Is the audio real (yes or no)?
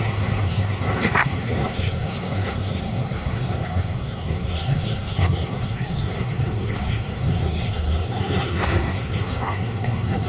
no